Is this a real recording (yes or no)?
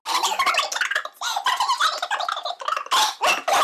yes